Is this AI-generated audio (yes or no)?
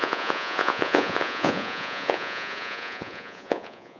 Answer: yes